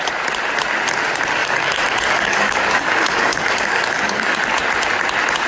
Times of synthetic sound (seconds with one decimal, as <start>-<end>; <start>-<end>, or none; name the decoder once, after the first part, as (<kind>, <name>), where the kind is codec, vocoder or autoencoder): 1.4-4.4 (codec, DAC)